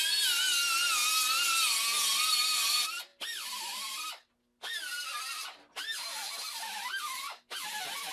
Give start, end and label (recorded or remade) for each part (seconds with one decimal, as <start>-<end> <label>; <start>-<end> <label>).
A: 0.0-8.1 recorded